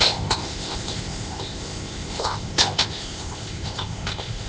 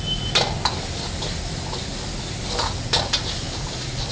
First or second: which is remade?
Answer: first